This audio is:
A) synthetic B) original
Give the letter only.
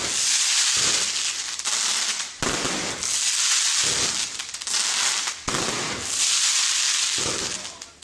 B